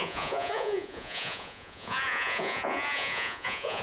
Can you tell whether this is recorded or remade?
remade